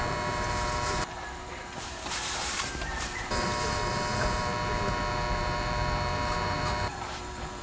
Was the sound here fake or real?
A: fake